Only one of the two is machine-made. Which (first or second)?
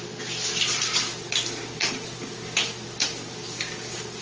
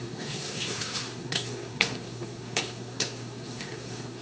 second